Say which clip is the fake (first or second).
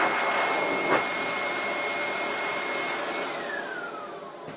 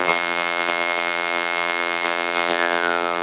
second